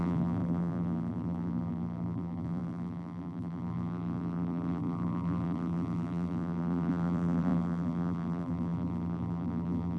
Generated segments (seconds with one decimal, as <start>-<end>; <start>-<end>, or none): 0.0-10.0